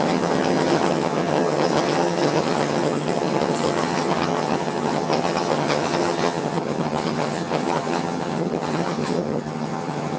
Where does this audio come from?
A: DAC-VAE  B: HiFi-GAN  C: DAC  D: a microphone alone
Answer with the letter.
B